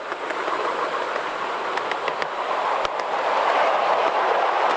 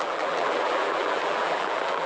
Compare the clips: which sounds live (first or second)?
first